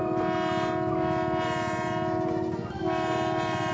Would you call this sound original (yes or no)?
yes